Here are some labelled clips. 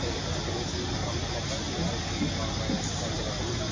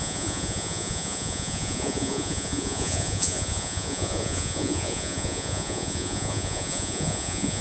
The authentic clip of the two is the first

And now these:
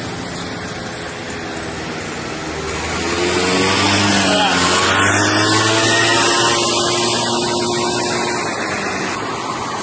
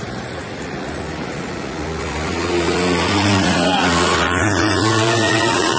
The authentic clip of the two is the first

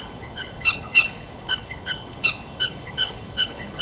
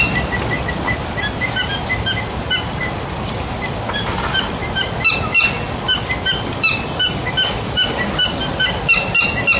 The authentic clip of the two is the second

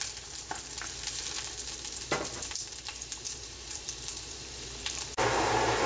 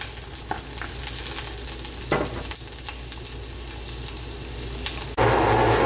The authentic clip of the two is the second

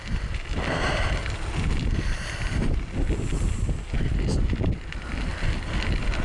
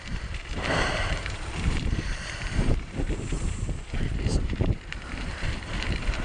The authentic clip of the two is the first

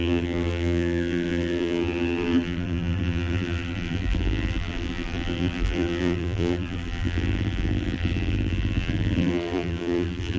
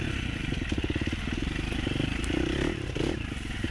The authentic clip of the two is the second